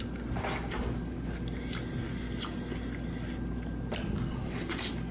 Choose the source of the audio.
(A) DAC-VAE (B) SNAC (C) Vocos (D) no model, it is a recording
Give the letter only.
D